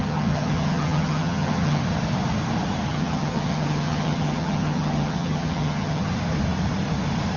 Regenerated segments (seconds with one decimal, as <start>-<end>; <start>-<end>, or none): 0.0-1.8; 2.9-6.1